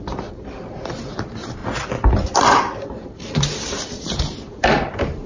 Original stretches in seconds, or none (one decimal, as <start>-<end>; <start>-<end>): 1.6-2.9

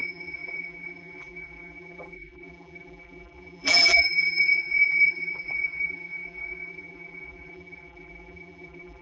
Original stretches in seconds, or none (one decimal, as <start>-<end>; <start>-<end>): none

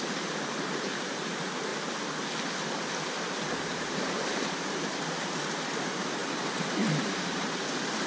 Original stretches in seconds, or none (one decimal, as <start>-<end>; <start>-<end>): 1.7-3.6

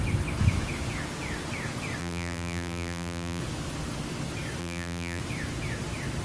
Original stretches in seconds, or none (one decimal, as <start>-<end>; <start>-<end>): 0.0-2.0; 3.4-4.6; 5.2-6.2